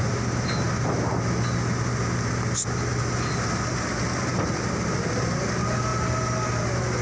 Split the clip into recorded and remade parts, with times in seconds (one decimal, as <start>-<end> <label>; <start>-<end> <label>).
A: 0.0-7.0 recorded